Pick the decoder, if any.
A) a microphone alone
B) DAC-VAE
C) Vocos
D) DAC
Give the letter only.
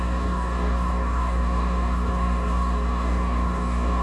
D